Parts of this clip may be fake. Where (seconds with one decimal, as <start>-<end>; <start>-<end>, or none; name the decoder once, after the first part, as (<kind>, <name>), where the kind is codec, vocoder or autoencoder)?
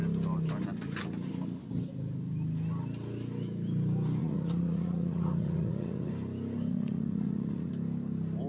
4.2-6.1 (vocoder, Vocos); 6.7-7.7